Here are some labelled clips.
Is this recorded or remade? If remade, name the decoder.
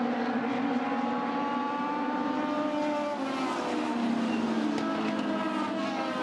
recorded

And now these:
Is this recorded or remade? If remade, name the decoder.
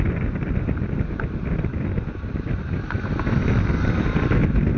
recorded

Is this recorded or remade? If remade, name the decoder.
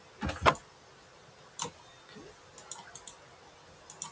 recorded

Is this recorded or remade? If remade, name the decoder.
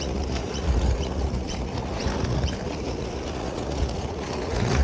remade, vocoder, Vocos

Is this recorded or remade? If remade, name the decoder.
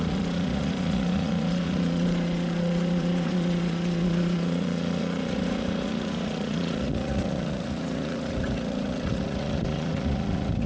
remade, vocoder, Vocos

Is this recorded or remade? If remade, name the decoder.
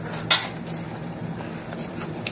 recorded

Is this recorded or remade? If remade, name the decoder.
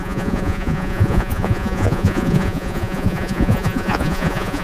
remade, vocoder, Vocos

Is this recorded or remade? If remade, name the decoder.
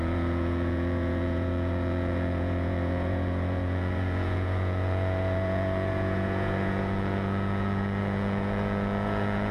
remade, vocoder, Vocos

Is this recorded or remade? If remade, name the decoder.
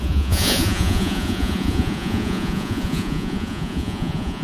remade, vocoder, Vocos